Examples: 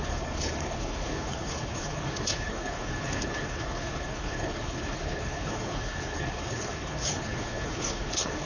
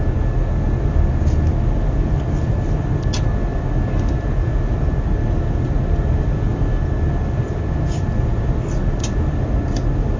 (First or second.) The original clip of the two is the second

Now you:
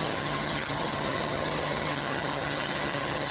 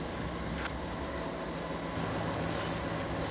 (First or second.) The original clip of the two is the second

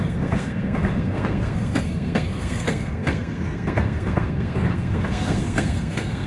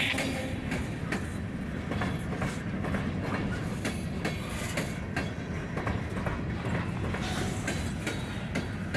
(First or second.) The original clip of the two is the second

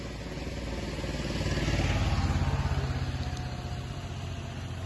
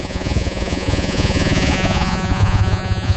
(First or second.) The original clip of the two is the first